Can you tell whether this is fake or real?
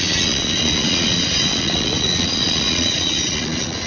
fake